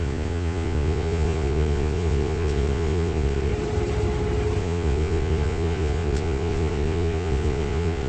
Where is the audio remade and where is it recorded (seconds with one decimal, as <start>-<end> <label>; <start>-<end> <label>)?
0.0-3.5 remade; 3.5-4.6 recorded; 4.6-8.1 remade